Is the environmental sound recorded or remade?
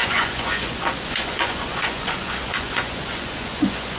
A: remade